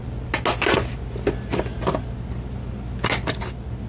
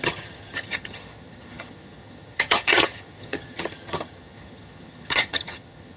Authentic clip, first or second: first